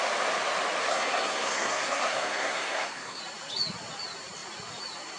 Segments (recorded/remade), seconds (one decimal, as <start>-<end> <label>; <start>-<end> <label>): 0.0-0.9 recorded; 0.9-3.2 remade; 3.2-5.2 recorded